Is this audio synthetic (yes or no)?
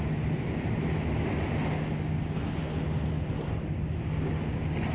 no